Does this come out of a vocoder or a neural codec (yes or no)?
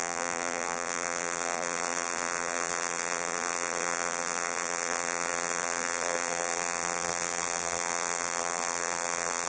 yes